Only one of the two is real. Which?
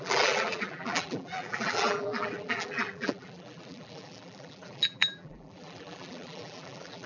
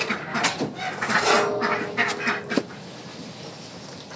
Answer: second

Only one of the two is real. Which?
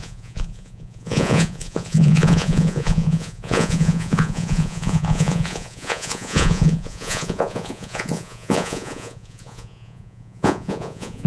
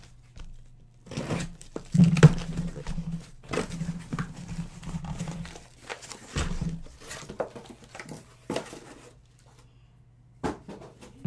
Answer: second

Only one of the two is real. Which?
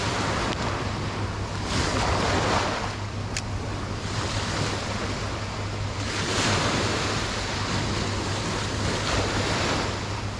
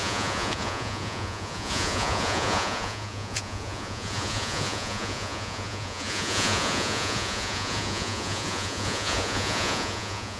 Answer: first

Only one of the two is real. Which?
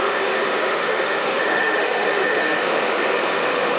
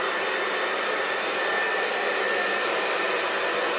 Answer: second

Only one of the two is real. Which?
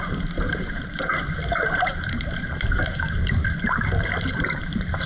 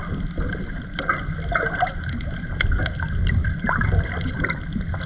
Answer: second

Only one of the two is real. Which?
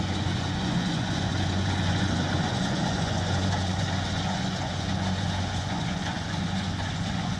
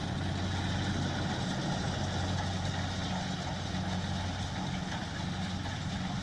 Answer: second